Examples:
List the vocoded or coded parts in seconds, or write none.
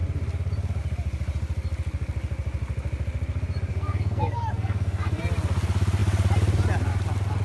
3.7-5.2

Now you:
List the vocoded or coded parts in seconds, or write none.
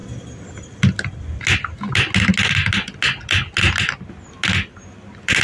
none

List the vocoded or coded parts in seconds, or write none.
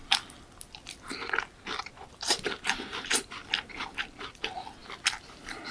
1.9-3.4; 4.0-4.8; 5.3-5.7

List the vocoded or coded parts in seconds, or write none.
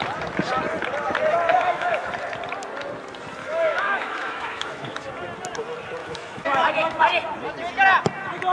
1.5-2.1; 3.4-5.1; 6.0-7.0